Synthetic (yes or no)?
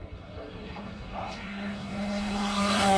yes